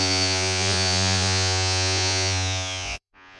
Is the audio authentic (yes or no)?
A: no